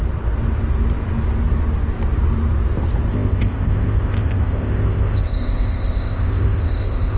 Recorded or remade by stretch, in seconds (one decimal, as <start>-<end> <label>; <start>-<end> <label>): 0.0-3.1 recorded; 3.1-7.2 remade